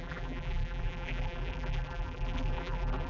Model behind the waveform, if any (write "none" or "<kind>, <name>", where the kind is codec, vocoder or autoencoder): vocoder, BigVGAN v2